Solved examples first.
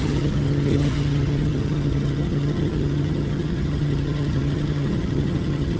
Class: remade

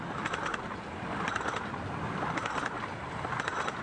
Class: recorded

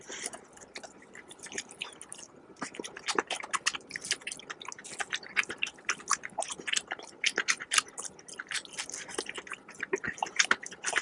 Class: recorded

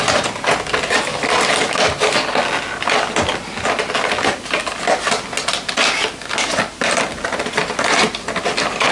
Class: recorded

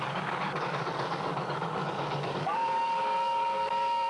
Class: remade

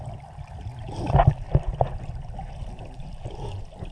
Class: recorded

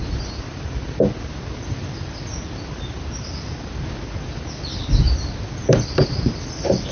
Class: recorded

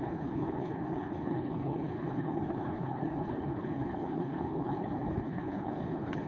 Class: remade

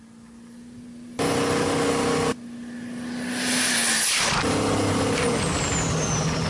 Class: recorded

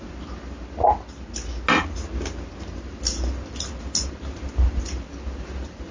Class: recorded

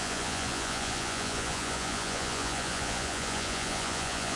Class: remade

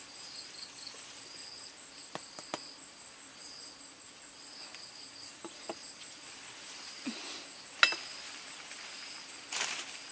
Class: recorded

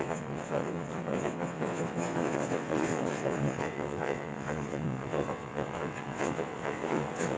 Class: remade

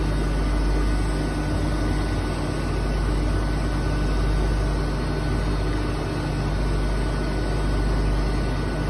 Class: recorded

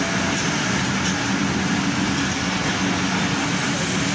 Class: recorded